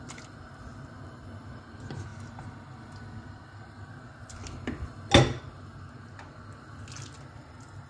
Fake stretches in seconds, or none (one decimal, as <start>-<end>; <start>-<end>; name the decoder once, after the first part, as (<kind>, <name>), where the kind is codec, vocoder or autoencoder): none